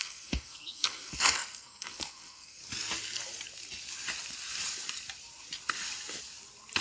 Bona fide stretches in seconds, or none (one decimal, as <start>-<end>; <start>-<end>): 2.6-6.8